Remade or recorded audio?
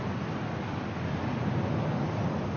recorded